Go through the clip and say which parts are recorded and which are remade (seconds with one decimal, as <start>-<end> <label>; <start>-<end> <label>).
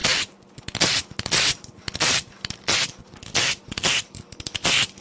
0.0-5.0 recorded